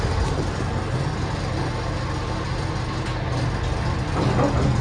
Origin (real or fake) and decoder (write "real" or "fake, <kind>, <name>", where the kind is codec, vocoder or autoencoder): real